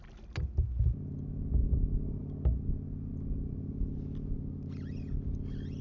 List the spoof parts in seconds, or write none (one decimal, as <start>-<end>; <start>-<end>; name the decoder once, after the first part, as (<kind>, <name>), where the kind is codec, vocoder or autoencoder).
none